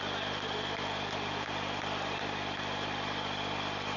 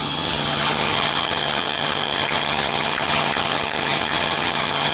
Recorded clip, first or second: first